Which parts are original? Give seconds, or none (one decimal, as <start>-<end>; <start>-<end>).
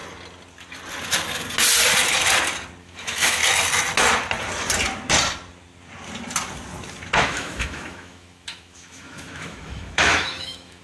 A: 0.0-2.8; 3.4-7.2